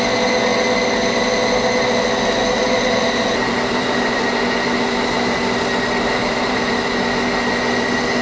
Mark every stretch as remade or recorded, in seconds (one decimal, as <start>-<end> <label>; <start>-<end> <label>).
0.0-2.4 recorded; 2.4-4.2 remade; 4.2-6.2 recorded; 6.2-6.7 remade; 6.7-8.2 recorded